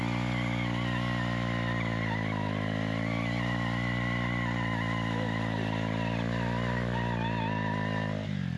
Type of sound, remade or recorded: recorded